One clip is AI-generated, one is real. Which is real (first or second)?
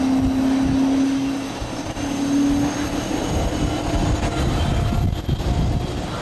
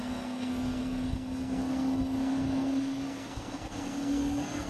first